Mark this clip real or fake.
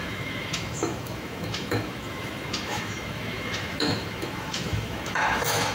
fake